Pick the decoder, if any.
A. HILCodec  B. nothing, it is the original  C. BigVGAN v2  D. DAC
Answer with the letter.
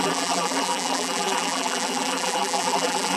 C